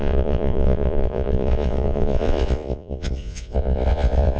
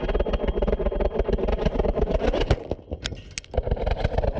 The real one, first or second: second